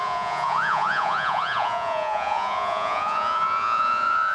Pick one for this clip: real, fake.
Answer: fake